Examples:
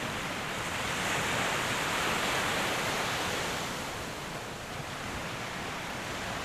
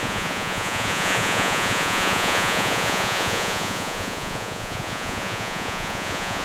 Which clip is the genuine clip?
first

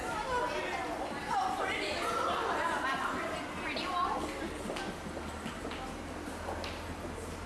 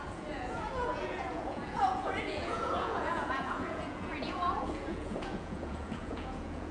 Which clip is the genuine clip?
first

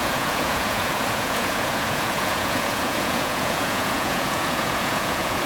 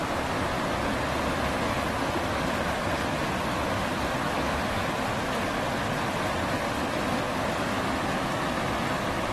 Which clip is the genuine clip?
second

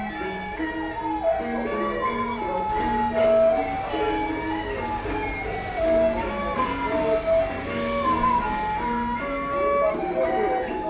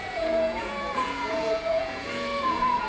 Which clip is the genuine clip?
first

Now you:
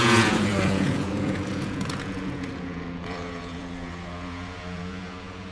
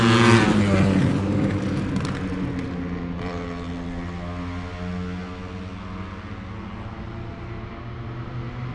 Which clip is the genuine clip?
second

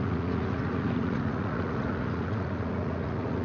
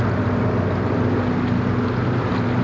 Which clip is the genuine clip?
second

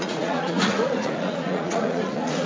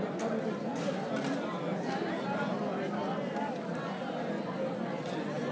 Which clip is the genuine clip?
second